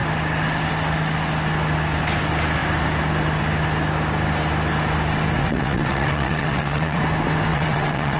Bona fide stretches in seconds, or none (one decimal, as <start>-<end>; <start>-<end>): 0.0-5.4; 7.0-7.5